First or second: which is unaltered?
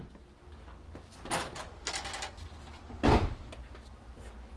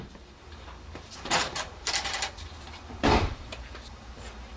first